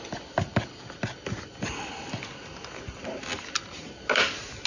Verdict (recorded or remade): recorded